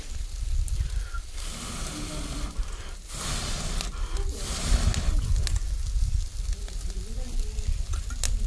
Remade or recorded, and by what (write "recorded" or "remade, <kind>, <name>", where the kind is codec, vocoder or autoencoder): recorded